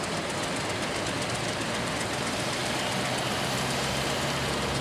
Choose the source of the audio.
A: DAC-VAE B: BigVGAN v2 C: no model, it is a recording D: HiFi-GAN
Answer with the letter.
B